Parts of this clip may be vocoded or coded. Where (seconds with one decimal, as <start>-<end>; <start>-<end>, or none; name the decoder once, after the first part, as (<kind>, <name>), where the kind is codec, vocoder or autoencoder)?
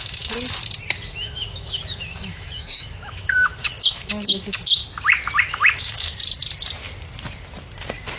0.0-0.6 (autoencoder, DAC-VAE); 1.1-4.8; 5.4-6.2